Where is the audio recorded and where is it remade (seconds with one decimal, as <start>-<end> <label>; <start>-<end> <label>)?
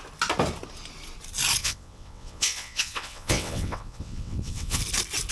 0.0-1.6 recorded; 1.6-4.8 remade; 4.8-5.3 recorded